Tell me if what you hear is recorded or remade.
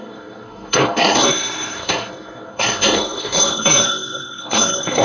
remade